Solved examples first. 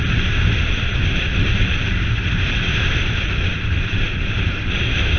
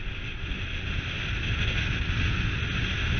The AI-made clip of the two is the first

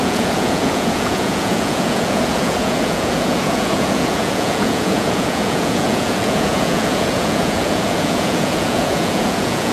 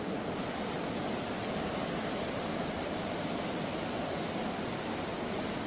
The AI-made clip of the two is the first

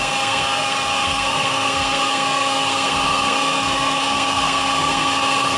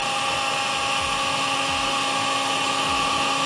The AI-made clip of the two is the first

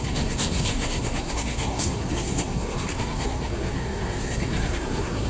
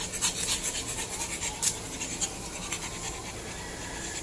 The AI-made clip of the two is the first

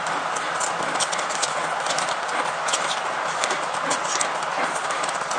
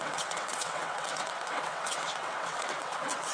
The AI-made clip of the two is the second